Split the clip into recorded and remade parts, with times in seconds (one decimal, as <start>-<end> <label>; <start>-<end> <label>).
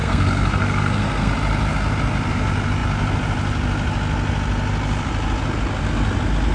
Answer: 0.0-1.3 remade; 1.3-6.5 recorded